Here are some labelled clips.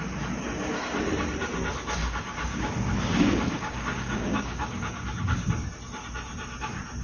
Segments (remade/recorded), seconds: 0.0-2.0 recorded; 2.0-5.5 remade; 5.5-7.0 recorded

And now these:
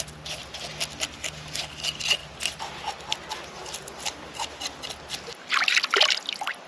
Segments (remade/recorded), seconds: 0.0-6.7 recorded

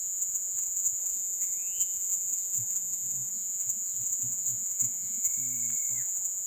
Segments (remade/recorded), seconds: 0.0-5.3 remade; 5.3-6.0 recorded; 6.0-6.5 remade

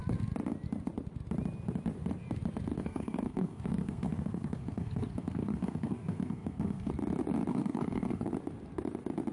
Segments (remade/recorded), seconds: 0.0-2.7 recorded; 2.7-6.9 remade; 6.9-7.5 recorded; 7.5-8.3 remade; 8.3-9.3 recorded

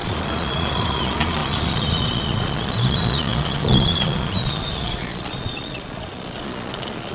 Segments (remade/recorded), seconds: 0.0-7.1 remade